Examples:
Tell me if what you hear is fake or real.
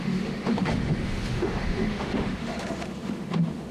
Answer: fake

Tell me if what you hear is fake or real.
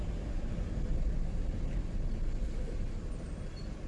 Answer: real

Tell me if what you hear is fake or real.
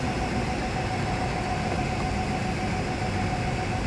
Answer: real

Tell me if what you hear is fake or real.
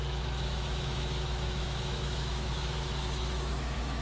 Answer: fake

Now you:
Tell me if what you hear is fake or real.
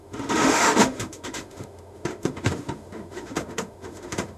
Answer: fake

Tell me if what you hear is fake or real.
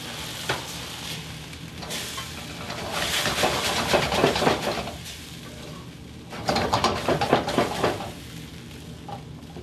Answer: real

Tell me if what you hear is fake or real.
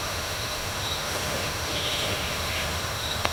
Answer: fake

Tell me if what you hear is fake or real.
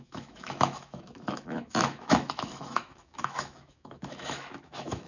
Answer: fake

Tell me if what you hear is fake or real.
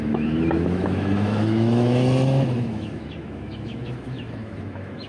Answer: fake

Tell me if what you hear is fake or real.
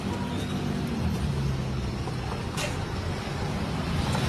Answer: real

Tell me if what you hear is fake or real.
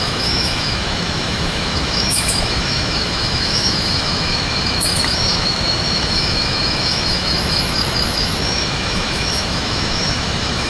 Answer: fake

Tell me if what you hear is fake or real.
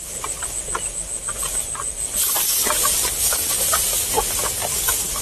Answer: real